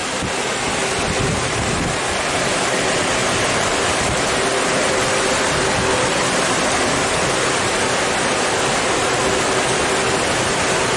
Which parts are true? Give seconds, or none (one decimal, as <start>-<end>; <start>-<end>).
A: 0.0-11.0